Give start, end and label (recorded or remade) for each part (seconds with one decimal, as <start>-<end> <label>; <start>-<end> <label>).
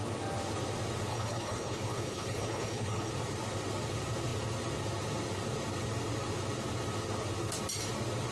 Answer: 0.0-1.1 recorded; 1.1-3.1 remade; 3.1-8.3 recorded